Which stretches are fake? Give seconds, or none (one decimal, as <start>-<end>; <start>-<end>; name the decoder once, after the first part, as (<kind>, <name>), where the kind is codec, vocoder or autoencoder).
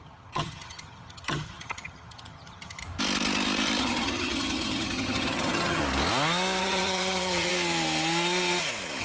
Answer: 0.0-2.8 (vocoder, HiFi-GAN); 3.8-5.8; 6.6-7.5